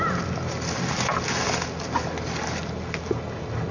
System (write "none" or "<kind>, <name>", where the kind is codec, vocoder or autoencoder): none